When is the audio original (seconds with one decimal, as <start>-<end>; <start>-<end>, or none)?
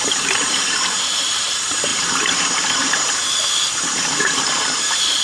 none